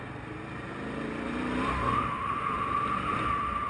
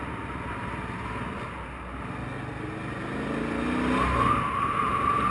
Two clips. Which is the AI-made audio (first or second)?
first